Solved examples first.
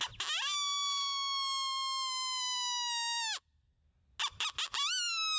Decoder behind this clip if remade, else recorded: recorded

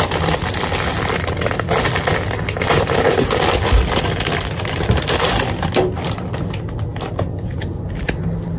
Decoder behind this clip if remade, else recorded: recorded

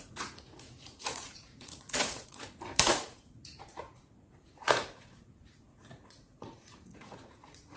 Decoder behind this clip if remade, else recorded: remade, vocoder, Vocos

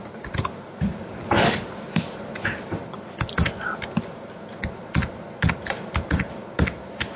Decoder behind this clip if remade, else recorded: recorded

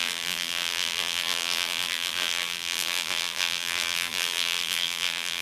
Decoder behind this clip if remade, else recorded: remade, vocoder, BigVGAN v2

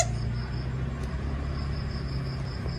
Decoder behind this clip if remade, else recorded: recorded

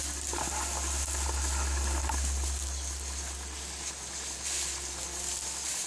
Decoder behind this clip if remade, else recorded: recorded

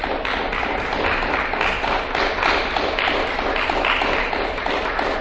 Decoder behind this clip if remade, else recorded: recorded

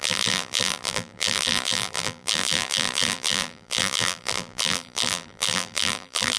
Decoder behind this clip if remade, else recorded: remade, vocoder, BigVGAN v2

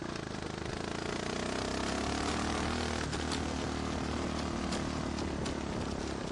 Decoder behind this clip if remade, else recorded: recorded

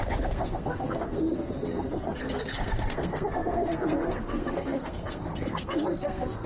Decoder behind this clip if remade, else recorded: remade, codec, SNAC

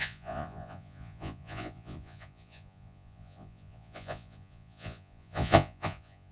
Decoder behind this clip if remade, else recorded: remade, vocoder, Vocos